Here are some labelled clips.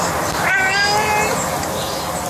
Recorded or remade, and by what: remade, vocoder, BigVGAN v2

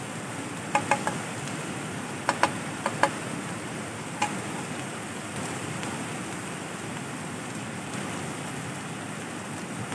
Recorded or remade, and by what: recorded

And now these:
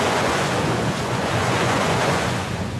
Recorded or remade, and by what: remade, vocoder, Vocos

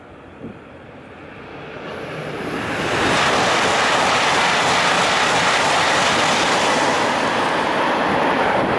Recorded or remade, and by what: recorded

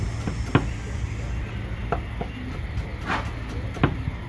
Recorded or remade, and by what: recorded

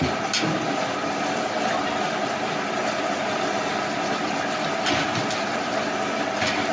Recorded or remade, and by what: recorded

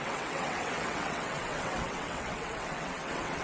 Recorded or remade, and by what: remade, vocoder, WaveNeXt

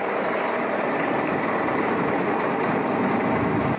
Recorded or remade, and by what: recorded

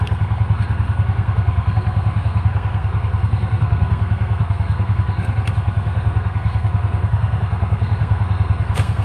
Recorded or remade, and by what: remade, codec, SNAC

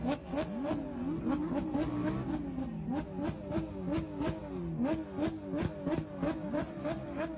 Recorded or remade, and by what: recorded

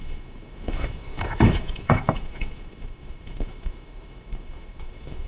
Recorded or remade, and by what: remade, autoencoder, DAC-VAE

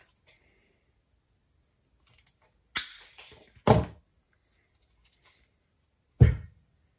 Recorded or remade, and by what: recorded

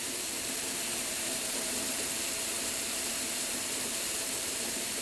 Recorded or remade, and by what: remade, vocoder, BigVGAN v2